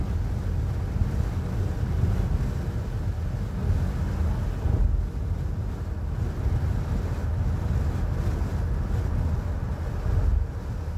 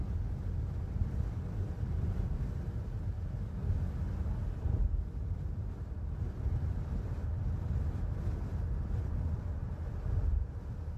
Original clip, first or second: first